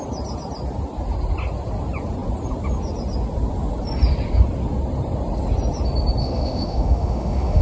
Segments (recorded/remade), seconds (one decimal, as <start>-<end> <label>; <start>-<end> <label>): 0.0-6.2 recorded; 6.2-7.6 remade